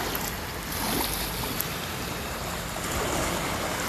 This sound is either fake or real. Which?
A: real